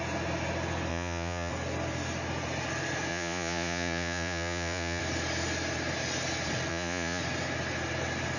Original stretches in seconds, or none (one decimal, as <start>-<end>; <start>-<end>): 0.0-0.9; 1.5-3.1; 5.0-6.7; 7.2-8.4